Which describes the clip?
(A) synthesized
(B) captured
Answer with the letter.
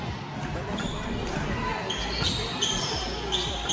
B